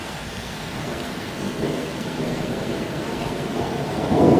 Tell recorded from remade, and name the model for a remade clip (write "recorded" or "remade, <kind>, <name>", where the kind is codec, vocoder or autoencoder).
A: remade, codec, SNAC